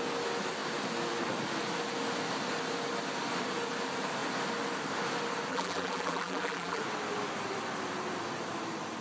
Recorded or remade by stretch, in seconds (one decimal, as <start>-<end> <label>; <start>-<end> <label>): 0.0-5.5 recorded; 5.5-6.8 remade; 6.8-9.0 recorded